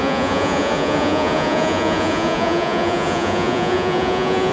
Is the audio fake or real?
fake